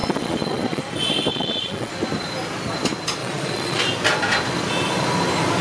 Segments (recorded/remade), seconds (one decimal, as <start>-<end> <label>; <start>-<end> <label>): 0.0-0.8 remade; 0.8-1.3 recorded; 1.3-1.9 remade; 1.9-3.2 recorded; 3.2-3.8 remade; 3.8-5.6 recorded